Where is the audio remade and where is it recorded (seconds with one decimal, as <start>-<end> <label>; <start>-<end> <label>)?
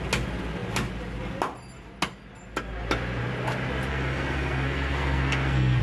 0.0-3.9 recorded; 3.9-5.8 remade